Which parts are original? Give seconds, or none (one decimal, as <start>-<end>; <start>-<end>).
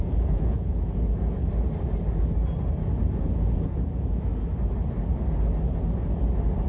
1.4-3.2; 4.3-6.7